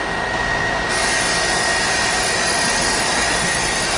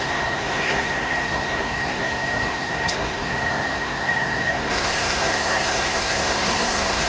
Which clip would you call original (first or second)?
first